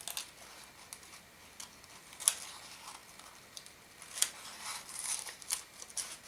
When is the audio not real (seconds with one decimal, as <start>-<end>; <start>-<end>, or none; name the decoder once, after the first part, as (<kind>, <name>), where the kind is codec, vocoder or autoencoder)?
4.7-5.7 (vocoder, BigVGAN v2)